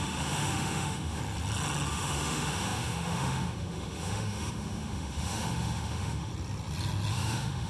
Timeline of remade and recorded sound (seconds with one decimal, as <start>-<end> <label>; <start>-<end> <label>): 0.0-1.2 remade; 1.2-1.9 recorded; 1.9-6.3 remade; 6.3-7.1 recorded; 7.1-7.7 remade